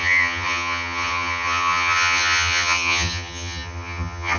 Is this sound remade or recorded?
remade